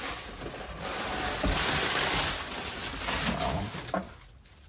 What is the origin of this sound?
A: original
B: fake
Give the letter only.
A